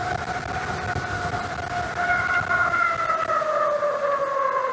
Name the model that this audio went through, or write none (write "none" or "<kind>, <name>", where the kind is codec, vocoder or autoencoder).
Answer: none